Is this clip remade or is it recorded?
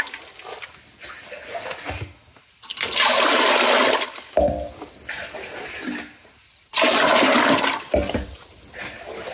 recorded